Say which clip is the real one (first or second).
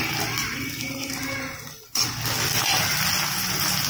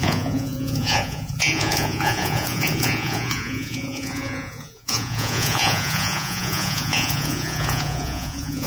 first